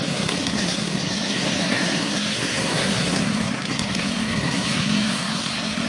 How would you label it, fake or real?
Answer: fake